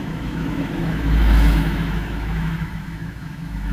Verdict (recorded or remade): remade